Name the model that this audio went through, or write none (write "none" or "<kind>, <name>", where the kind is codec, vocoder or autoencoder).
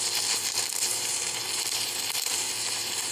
vocoder, BigVGAN v2